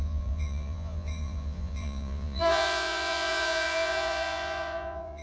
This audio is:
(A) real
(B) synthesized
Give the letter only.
B